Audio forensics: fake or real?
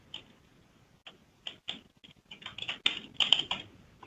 real